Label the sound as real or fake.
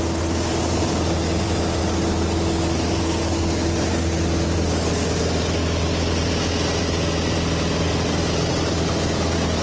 real